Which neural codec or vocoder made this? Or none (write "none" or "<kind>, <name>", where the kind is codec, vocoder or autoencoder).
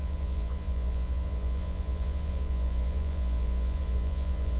vocoder, Vocos